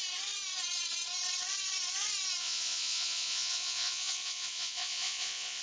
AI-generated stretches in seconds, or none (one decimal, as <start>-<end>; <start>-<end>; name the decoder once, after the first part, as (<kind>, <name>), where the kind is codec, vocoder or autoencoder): 2.4-5.6 (vocoder, Vocos)